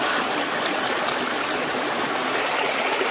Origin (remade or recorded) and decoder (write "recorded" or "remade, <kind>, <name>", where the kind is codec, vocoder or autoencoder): recorded